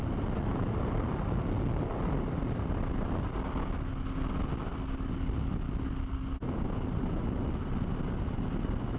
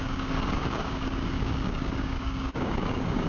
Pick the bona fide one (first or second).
first